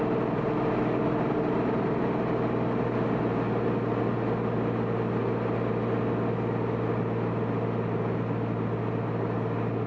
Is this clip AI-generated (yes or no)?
no